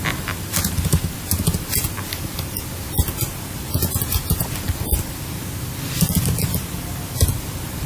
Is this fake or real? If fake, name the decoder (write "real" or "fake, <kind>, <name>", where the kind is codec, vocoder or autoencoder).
real